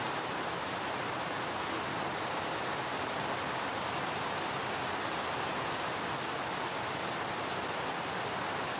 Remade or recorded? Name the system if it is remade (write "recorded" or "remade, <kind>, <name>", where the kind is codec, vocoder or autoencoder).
recorded